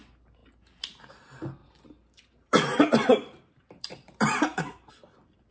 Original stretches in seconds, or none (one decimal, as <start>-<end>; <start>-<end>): 0.0-1.6; 4.9-5.5